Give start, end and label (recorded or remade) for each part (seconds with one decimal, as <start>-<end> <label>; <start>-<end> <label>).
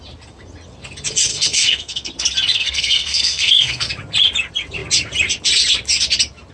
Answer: 0.0-1.3 recorded; 1.3-2.1 remade; 2.1-2.5 recorded; 2.5-3.9 remade; 3.9-6.5 recorded